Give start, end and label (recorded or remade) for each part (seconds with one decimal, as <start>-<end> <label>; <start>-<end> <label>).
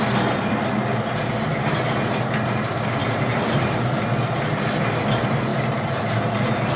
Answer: 0.0-3.0 recorded; 3.0-4.0 remade; 4.0-5.5 recorded; 5.5-6.8 remade